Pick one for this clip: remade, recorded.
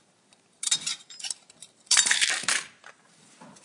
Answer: remade